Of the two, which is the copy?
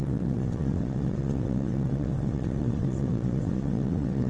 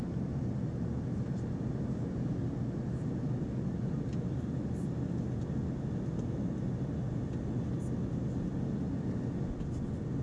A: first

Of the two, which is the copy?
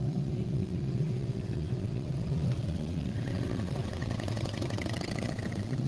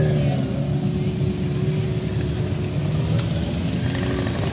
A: first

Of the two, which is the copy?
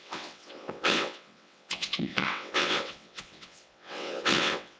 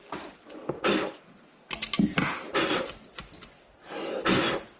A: first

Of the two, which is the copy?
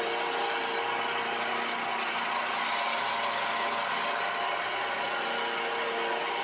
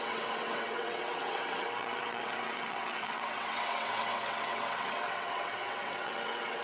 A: second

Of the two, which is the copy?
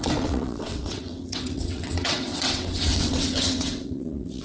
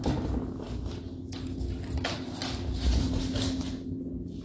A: first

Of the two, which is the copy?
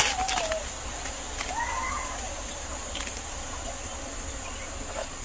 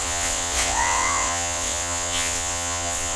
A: second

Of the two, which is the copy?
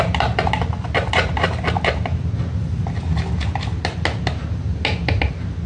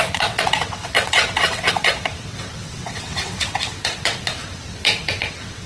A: second